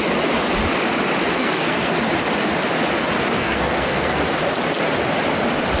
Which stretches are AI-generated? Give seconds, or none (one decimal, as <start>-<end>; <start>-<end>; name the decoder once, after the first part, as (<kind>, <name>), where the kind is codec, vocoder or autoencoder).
1.3-2.0 (codec, SNAC); 3.4-4.2